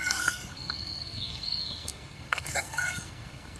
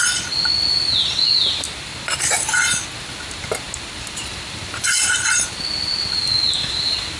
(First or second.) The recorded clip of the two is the second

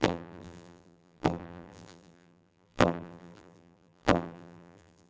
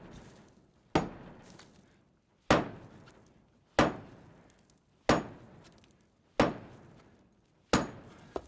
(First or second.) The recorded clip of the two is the second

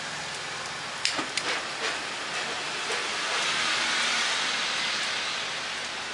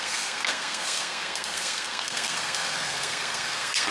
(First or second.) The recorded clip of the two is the first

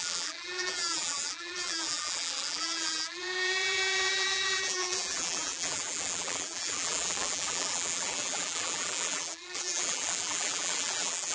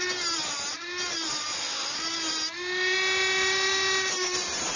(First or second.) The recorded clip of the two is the second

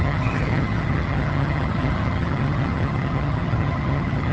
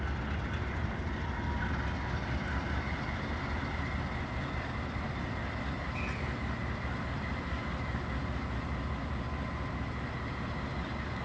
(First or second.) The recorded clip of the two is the second